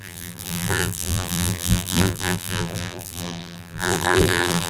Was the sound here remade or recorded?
remade